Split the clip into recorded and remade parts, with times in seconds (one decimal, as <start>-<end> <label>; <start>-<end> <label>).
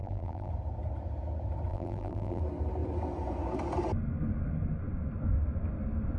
0.0-0.5 remade; 0.5-1.7 recorded; 1.7-2.4 remade; 2.4-6.2 recorded